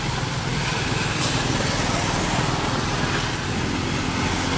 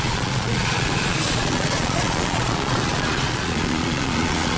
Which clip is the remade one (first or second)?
second